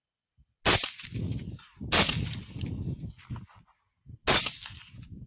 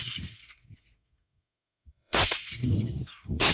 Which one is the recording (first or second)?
first